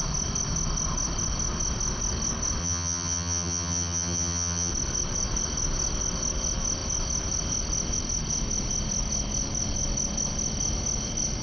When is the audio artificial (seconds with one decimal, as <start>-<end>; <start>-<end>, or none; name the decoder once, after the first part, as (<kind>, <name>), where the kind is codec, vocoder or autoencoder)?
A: 2.6-4.7 (vocoder, HiFi-GAN)